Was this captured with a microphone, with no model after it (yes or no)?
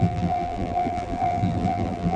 no